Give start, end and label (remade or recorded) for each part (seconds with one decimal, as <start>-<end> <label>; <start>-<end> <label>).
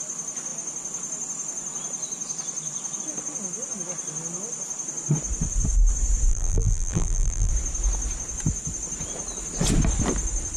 0.0-6.3 recorded; 6.3-7.5 remade; 7.5-10.6 recorded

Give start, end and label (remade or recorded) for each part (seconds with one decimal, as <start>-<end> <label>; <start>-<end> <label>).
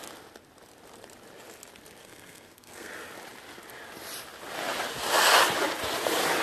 0.0-2.0 recorded; 2.0-2.9 remade; 2.9-6.4 recorded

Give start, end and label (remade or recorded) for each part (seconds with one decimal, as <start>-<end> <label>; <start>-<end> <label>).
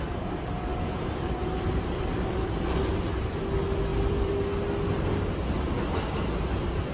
0.0-0.7 recorded; 0.7-2.6 remade; 2.6-3.9 recorded; 3.9-4.4 remade; 4.4-6.9 recorded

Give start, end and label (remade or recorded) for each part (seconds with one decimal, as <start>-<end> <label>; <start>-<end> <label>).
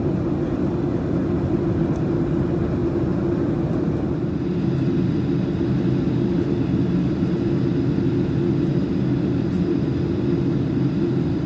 0.0-11.5 recorded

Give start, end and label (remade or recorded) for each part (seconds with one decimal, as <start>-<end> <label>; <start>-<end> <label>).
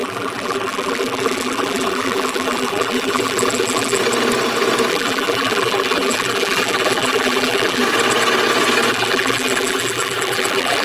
0.0-4.0 remade; 4.0-4.9 recorded; 4.9-7.8 remade; 7.8-8.9 recorded; 8.9-10.8 remade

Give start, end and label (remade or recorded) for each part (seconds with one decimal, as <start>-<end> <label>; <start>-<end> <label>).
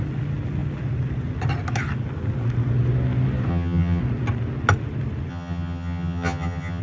0.0-3.5 recorded; 3.5-4.0 remade; 4.0-5.3 recorded; 5.3-6.8 remade